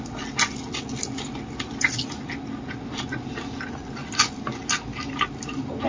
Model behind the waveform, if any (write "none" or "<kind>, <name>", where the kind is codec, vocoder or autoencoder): none